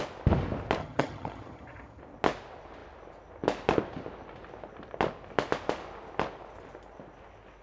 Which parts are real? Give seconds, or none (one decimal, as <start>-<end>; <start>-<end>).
0.0-0.8; 2.0-7.6